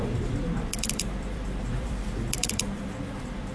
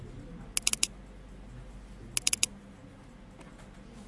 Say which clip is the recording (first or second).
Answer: second